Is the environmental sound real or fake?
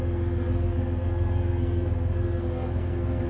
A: fake